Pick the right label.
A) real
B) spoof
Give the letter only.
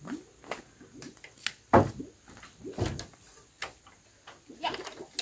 A